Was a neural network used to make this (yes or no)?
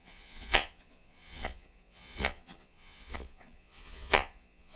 yes